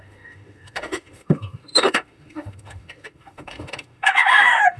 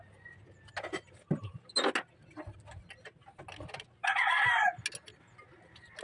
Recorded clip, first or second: second